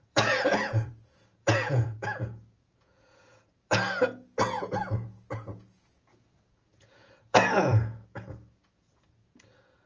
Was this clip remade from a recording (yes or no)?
yes